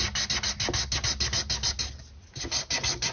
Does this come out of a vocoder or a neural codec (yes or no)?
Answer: no